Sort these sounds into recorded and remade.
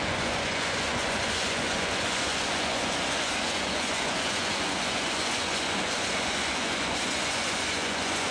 remade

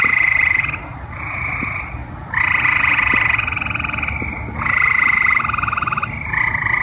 recorded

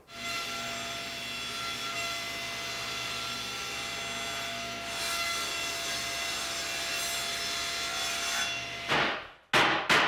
recorded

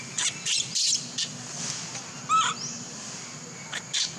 recorded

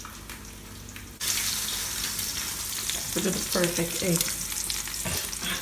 recorded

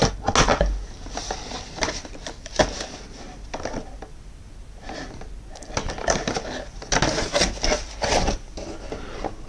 recorded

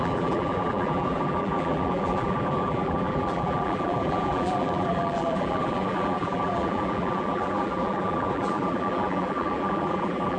remade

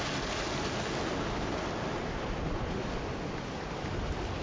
recorded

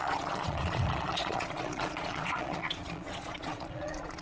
remade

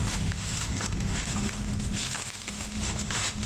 remade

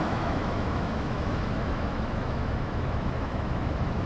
remade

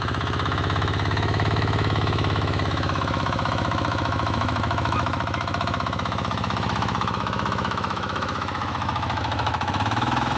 remade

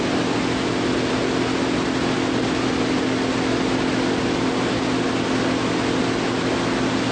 recorded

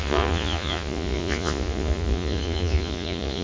remade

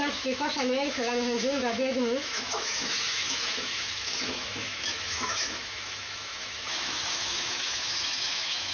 remade